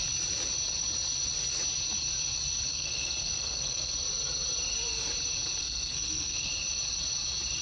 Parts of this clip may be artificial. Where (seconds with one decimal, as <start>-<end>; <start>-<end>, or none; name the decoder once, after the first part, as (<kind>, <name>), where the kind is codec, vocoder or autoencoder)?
2.7-3.9 (codec, SNAC); 5.6-6.5